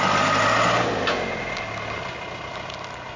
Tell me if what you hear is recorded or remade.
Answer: recorded